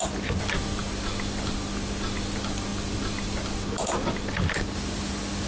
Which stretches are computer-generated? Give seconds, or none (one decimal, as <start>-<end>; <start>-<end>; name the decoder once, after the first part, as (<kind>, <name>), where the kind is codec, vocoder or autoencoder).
none